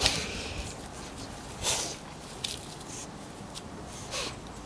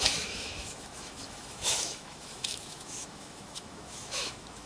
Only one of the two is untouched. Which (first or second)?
first